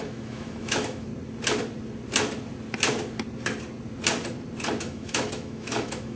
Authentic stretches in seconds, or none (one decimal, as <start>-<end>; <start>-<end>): 1.1-4.8